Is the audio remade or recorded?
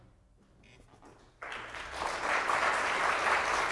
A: recorded